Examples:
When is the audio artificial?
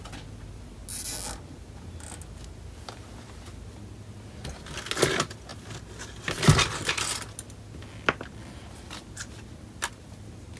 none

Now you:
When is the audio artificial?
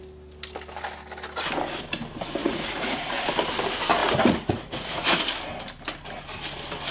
2.4-3.3 (vocoder, Vocos); 4.0-5.2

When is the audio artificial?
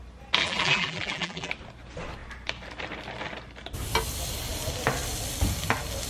0.4-1.5 (vocoder, BigVGAN v2)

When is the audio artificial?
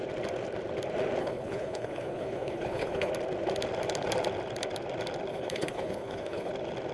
1.2-3.1 (codec, HILCodec); 5.3-6.5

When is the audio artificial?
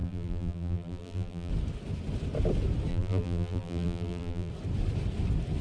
0.0-1.5 (vocoder, BigVGAN v2); 2.9-4.5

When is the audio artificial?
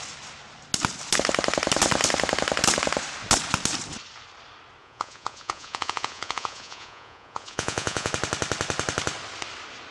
4.8-8.1 (vocoder, Vocos)